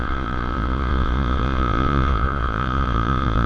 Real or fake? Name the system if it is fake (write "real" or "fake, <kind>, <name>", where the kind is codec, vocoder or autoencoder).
fake, vocoder, Vocos